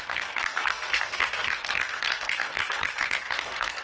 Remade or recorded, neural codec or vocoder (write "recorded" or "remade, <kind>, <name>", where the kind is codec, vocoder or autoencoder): remade, codec, SNAC